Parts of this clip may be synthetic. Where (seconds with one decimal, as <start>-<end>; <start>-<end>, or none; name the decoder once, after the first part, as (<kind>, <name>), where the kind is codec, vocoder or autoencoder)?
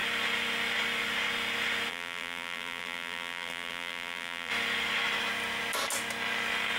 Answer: 1.9-4.5 (vocoder, BigVGAN v2)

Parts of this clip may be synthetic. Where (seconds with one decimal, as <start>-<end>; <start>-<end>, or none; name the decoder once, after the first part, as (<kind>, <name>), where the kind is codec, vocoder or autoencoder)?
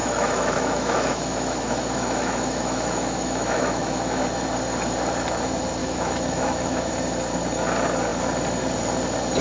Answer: 0.0-4.2 (autoencoder, DAC-VAE); 5.8-6.9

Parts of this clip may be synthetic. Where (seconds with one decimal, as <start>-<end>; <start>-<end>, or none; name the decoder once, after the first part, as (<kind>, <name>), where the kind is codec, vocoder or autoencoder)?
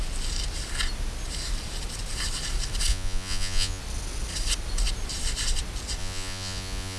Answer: 2.9-3.8 (vocoder, Vocos); 6.0-7.0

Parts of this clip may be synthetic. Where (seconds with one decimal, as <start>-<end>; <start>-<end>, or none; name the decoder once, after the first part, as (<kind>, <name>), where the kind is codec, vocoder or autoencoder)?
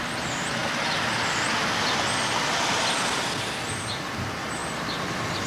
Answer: none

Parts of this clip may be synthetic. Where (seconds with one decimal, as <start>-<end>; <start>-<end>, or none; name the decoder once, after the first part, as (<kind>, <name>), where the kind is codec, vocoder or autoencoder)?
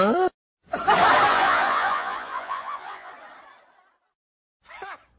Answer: 1.3-3.1 (vocoder, Vocos)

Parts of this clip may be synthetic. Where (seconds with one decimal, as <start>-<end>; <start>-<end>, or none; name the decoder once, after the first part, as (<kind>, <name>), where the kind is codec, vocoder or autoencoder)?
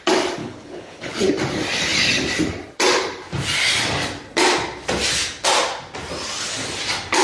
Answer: 0.4-1.3 (codec, HILCodec)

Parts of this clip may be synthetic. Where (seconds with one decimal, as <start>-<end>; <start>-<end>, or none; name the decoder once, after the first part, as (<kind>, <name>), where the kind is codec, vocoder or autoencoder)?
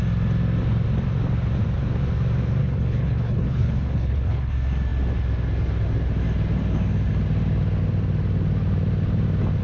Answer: 2.6-4.5 (codec, HILCodec)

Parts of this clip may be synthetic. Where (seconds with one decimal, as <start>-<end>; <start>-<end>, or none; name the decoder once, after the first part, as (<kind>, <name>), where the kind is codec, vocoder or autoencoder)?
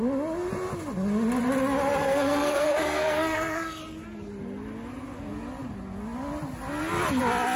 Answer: 2.0-3.8 (codec, SNAC)